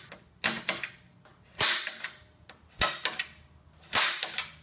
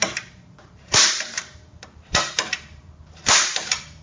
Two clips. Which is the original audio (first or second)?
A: first